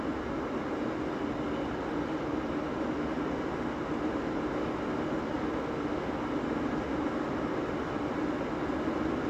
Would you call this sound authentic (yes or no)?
yes